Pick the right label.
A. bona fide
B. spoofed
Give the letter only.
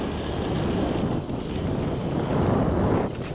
A